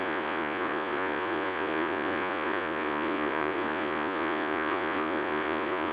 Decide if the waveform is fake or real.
fake